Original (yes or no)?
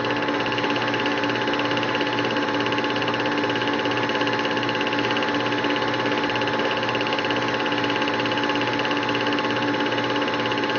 yes